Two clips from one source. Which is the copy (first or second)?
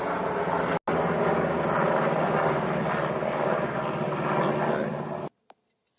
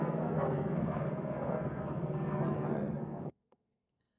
second